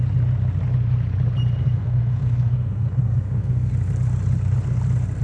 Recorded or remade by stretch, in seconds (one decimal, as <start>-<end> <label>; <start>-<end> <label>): 0.0-1.6 recorded; 1.6-3.7 remade; 3.7-5.2 recorded